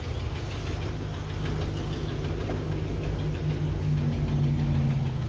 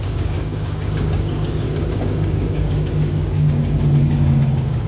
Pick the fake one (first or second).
second